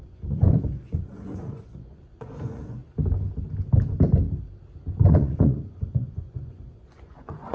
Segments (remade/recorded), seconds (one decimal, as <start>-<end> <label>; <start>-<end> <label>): 0.0-2.8 remade; 2.8-5.0 recorded; 5.0-7.5 remade